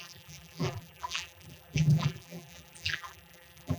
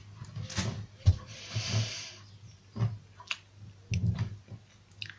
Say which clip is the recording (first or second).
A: second